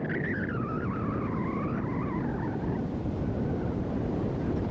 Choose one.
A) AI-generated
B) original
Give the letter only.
B